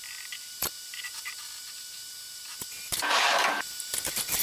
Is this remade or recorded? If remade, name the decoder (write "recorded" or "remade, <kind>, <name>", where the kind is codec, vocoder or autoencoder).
remade, vocoder, BigVGAN v2